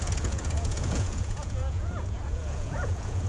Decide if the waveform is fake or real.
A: fake